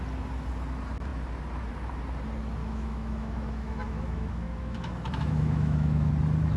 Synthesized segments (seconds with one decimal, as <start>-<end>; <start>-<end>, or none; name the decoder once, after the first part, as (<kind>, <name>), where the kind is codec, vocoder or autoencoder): 2.6-6.1 (autoencoder, DAC-VAE)